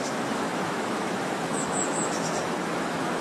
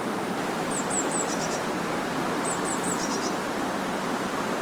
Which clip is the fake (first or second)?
first